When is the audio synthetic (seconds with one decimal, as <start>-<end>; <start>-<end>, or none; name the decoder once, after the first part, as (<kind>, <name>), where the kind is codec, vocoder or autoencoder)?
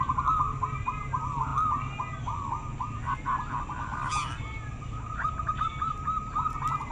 none